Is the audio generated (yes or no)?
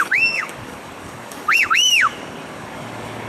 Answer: yes